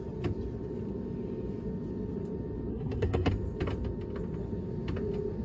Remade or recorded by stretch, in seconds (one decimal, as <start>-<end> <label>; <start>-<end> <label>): 0.0-2.7 recorded; 2.7-3.3 remade; 3.3-5.4 recorded

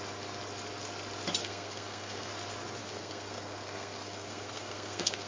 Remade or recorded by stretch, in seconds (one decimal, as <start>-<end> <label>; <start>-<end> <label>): 0.0-1.4 recorded; 1.4-2.3 remade; 2.3-2.8 recorded; 2.8-5.3 remade

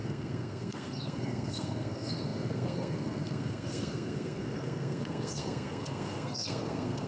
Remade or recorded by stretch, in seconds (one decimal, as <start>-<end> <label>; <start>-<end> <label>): 0.0-7.1 remade

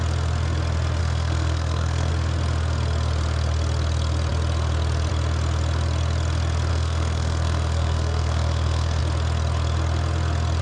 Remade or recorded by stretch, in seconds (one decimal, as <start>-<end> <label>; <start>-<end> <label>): 0.0-1.0 recorded; 1.0-2.1 remade; 2.1-6.7 recorded; 6.7-9.0 remade; 9.0-10.6 recorded

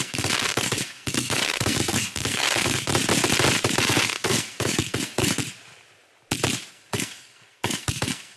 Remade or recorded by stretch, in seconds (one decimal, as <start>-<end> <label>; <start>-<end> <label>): 0.0-2.9 remade; 2.9-3.8 recorded; 3.8-5.4 remade; 5.4-6.7 recorded; 6.7-8.4 remade

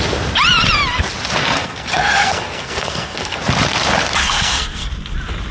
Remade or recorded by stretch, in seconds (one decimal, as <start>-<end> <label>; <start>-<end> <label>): 0.0-1.4 recorded; 1.4-3.4 remade; 3.4-4.2 recorded; 4.2-4.9 remade; 4.9-5.5 recorded

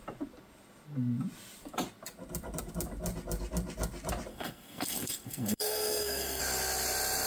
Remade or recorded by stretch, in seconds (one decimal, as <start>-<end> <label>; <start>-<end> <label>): 0.0-4.3 recorded; 4.3-6.4 remade; 6.4-7.3 recorded